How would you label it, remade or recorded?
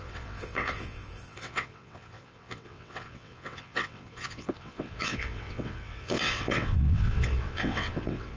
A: remade